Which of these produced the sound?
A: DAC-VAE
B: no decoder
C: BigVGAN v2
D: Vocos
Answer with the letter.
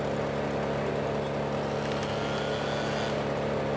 B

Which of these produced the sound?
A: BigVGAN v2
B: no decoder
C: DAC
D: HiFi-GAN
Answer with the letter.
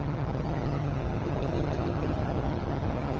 D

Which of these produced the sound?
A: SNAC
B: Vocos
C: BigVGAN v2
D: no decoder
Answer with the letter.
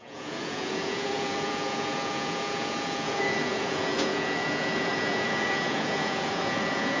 B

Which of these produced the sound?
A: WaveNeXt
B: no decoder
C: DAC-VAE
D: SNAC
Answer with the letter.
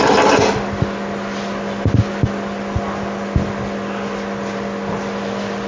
B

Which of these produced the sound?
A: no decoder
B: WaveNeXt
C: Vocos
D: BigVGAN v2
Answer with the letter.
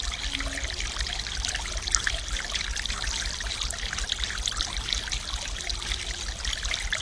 A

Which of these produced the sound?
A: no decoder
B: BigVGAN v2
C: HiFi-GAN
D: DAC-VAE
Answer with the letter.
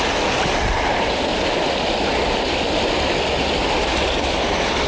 A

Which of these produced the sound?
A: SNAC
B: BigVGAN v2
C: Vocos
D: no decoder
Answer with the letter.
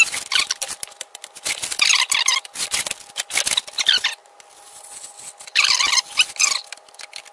D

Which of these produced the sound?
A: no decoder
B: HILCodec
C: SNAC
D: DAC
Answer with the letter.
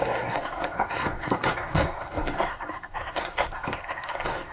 C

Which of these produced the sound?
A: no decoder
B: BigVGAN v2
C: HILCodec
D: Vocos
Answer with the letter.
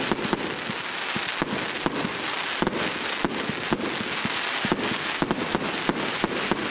A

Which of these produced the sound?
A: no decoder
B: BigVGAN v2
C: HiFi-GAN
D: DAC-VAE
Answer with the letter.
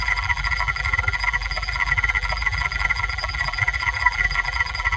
B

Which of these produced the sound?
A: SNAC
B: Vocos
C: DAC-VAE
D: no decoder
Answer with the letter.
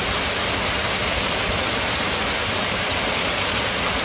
D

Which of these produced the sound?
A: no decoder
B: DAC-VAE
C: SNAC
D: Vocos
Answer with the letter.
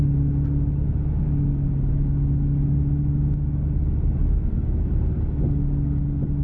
A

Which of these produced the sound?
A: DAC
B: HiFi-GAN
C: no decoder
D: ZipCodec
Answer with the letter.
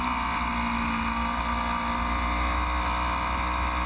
C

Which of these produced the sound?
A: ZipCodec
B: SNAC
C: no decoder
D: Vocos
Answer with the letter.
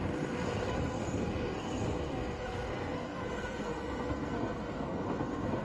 B